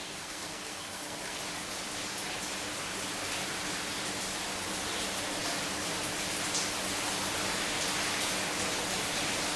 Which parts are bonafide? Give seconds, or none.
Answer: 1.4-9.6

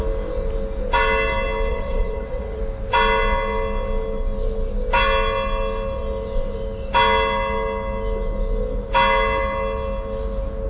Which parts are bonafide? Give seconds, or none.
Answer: 0.0-1.7; 2.6-10.7

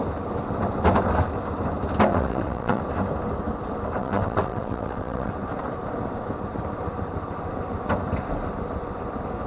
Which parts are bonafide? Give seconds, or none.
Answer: 0.0-2.1; 2.8-4.0; 5.3-9.5

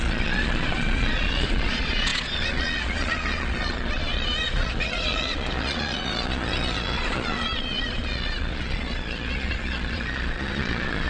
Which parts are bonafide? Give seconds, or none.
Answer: none